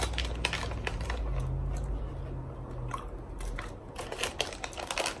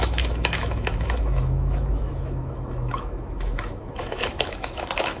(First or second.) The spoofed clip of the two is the second